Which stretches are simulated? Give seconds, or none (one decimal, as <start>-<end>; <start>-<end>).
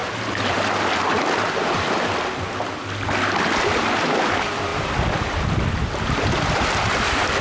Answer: none